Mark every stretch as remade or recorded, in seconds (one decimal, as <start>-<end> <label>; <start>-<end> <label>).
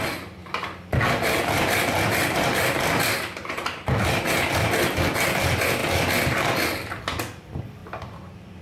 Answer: 0.0-7.8 recorded; 7.8-8.6 remade